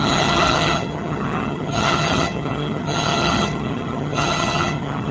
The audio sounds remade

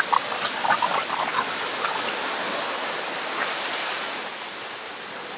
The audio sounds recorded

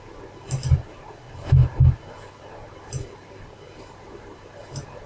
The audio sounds remade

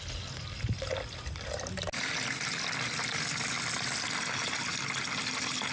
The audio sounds recorded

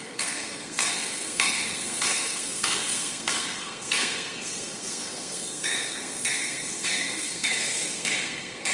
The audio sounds remade